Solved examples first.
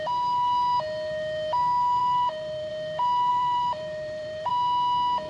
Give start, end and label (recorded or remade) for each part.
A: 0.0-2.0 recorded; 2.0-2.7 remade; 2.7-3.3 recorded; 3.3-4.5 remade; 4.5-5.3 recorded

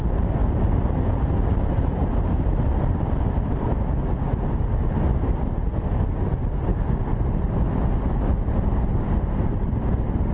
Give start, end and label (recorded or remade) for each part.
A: 0.0-0.4 recorded; 0.4-1.3 remade; 1.3-6.7 recorded; 6.7-7.3 remade; 7.3-10.3 recorded

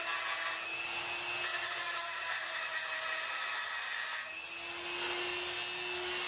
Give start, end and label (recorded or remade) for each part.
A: 0.0-1.5 recorded; 1.5-2.6 remade; 2.6-6.3 recorded

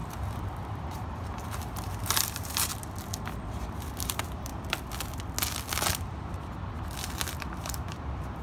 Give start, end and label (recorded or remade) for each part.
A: 0.0-2.7 remade; 2.7-3.6 recorded; 3.6-4.5 remade; 4.5-7.6 recorded; 7.6-8.4 remade

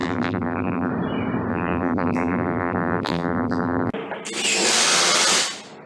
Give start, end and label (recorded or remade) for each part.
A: 0.0-0.9 remade; 0.9-1.5 recorded; 1.5-3.9 remade; 3.9-5.9 recorded

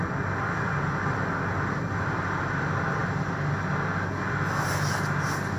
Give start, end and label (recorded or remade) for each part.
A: 0.0-5.6 recorded